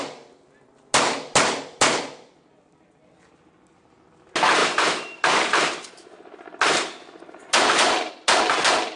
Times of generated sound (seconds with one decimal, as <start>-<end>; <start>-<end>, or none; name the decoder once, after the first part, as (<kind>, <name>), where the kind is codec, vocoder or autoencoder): 4.6-8.1 (vocoder, BigVGAN v2)